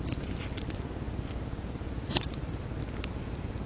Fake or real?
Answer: real